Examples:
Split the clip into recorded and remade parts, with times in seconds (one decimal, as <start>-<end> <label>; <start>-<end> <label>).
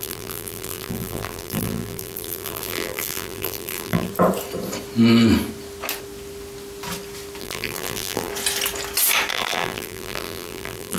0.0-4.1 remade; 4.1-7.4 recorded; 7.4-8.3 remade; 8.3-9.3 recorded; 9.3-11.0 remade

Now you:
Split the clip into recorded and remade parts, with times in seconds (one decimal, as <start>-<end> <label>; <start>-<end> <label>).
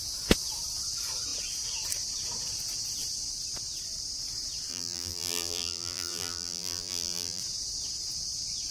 0.0-4.7 recorded; 4.7-7.4 remade; 7.4-8.7 recorded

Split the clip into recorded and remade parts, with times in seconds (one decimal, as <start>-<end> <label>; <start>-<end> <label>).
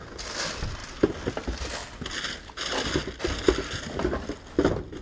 0.0-5.0 recorded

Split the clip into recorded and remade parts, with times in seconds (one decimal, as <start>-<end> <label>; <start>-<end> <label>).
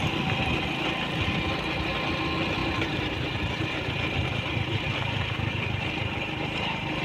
0.0-2.6 recorded; 2.6-7.0 remade